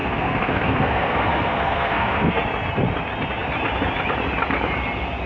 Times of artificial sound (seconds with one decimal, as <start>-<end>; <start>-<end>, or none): 0.0-2.4

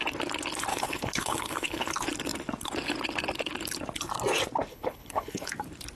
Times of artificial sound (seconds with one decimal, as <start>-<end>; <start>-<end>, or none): 0.7-1.9; 4.7-5.5

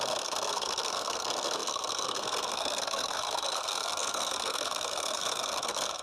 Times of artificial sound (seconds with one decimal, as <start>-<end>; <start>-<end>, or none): 0.0-6.0

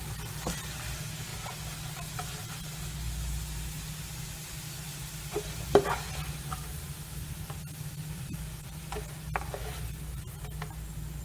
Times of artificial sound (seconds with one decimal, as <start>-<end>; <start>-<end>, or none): none